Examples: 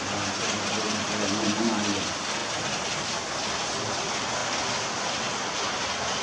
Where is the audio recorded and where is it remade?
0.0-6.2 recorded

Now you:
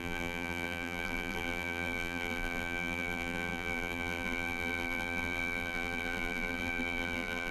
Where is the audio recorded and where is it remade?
0.0-7.5 remade

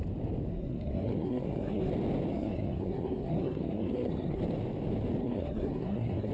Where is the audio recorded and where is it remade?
0.0-0.5 recorded; 0.5-1.9 remade; 1.9-2.3 recorded; 2.3-4.4 remade; 4.4-5.2 recorded; 5.2-6.3 remade

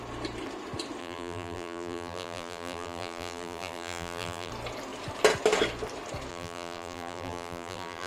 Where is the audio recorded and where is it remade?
0.0-1.0 recorded; 1.0-4.5 remade; 4.5-6.3 recorded; 6.3-8.1 remade

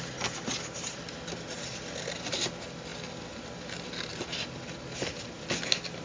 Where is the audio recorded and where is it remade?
0.0-6.0 recorded